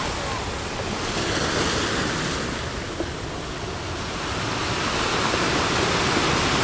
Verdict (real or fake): real